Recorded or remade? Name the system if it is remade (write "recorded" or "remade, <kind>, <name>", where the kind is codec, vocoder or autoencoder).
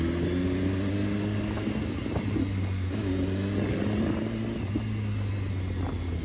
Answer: recorded